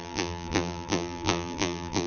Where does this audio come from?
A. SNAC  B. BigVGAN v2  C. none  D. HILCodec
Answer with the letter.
B